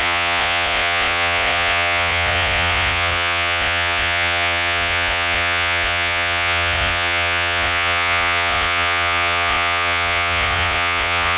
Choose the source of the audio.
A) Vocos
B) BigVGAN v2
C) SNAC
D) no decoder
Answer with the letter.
A